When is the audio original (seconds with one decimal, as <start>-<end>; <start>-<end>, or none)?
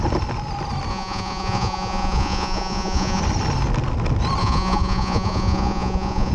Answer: 0.0-0.9; 3.2-4.4